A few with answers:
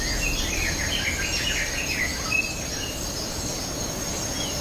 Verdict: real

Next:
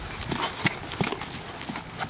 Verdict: real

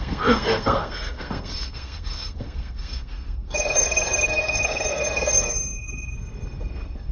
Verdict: fake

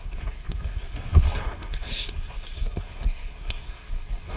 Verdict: fake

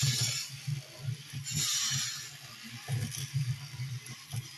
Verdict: real